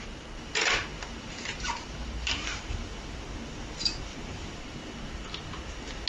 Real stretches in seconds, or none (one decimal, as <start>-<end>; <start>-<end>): 0.0-0.9; 3.2-4.1; 5.6-6.1